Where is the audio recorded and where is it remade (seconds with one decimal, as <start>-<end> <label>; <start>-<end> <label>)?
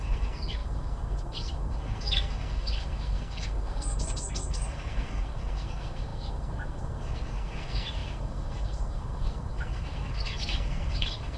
0.0-11.4 remade